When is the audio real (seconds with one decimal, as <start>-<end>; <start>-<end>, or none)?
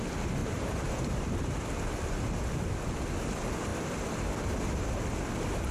0.0-0.4; 1.0-5.7